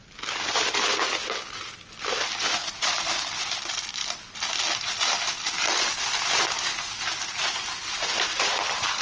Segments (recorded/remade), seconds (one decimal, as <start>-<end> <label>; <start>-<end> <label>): 0.0-0.9 remade; 0.9-2.6 recorded; 2.6-3.7 remade; 3.7-9.0 recorded